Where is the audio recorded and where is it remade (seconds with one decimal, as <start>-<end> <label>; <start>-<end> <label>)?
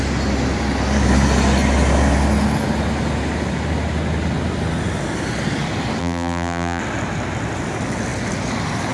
0.0-6.0 recorded; 6.0-6.8 remade; 6.8-8.9 recorded